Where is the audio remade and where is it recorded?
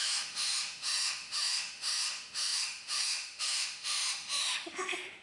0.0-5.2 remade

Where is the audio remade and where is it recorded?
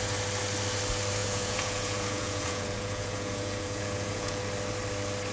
0.0-1.2 recorded; 1.2-4.4 remade; 4.4-5.3 recorded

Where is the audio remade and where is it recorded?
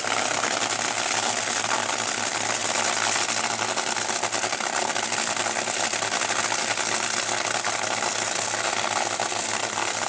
0.0-10.1 recorded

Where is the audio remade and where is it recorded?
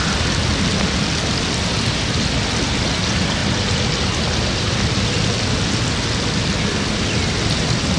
0.0-8.0 recorded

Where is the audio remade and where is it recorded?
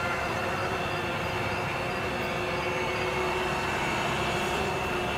0.0-5.2 recorded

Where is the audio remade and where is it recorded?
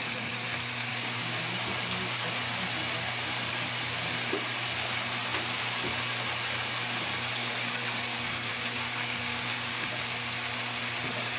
0.0-0.9 recorded; 0.9-1.4 remade; 1.4-8.5 recorded; 8.5-10.0 remade; 10.0-11.4 recorded